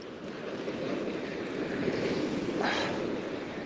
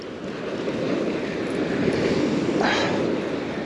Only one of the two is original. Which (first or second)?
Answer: second